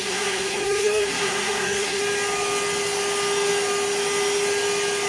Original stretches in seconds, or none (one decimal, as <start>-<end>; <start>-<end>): 2.0-5.1

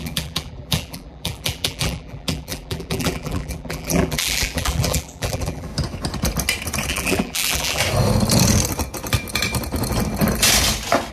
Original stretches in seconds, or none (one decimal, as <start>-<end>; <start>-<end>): 5.7-6.9; 7.8-11.1

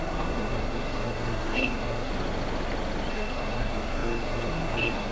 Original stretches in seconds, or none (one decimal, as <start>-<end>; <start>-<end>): 2.1-3.1

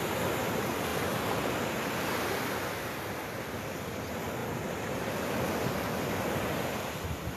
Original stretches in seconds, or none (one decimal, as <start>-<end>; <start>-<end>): 0.0-4.4

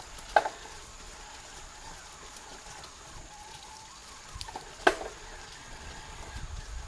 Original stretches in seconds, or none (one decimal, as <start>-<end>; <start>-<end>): 0.0-5.6; 6.4-6.9